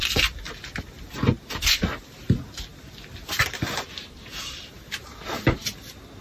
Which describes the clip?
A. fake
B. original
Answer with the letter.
B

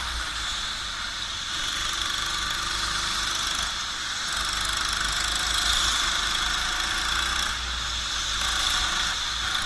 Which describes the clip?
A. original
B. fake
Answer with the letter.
A